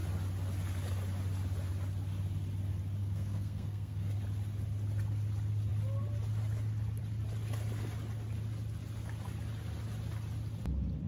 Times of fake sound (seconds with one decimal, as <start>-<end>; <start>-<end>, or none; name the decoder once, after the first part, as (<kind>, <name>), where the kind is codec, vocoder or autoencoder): 3.0-4.1 (codec, SNAC)